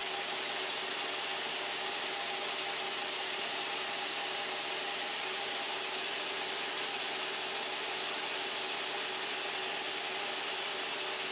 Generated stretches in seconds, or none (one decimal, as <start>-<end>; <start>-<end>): none